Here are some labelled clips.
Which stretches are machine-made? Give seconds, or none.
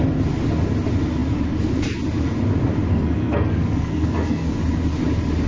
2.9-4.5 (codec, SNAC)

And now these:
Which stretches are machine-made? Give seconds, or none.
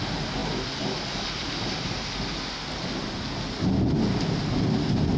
none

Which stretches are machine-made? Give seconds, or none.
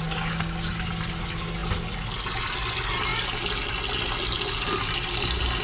none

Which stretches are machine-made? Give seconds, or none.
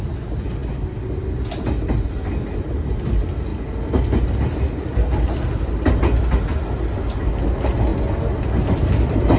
none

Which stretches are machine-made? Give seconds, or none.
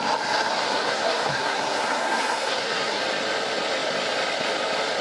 0.5-3.0 (codec, SNAC)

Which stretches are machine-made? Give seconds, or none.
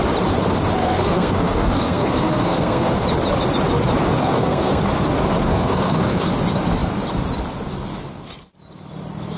0.8-2.9 (codec, SNAC); 4.2-4.8; 5.5-6.3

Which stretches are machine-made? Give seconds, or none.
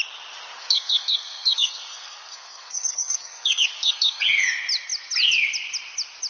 0.6-4.2 (codec, SNAC)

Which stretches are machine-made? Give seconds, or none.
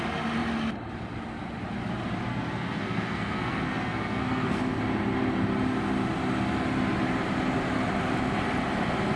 2.3-4.6 (codec, SNAC)